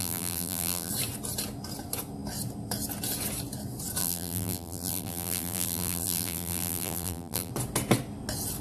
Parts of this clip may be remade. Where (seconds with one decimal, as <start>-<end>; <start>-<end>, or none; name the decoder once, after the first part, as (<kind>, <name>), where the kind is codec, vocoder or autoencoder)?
0.0-0.9 (vocoder, BigVGAN v2); 4.0-7.5